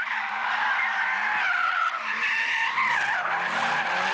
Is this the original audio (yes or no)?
yes